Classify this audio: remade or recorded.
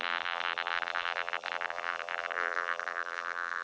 remade